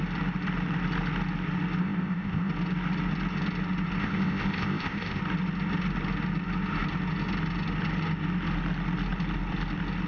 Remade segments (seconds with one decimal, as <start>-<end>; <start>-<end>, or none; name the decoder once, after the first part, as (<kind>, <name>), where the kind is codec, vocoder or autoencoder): 1.8-2.5 (codec, ZipCodec); 4.0-5.2